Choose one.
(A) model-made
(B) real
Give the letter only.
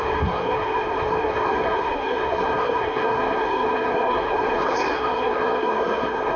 A